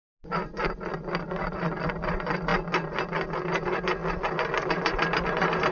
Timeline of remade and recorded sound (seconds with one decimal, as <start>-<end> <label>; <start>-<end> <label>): 0.0-1.4 recorded; 1.4-2.5 remade; 2.5-3.4 recorded; 3.4-4.0 remade; 4.0-4.6 recorded; 4.6-5.7 remade